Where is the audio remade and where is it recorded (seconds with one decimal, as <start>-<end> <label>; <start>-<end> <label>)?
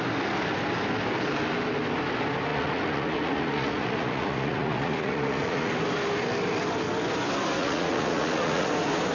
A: 0.0-2.5 recorded; 2.5-5.7 remade; 5.7-7.6 recorded; 7.6-8.7 remade; 8.7-9.1 recorded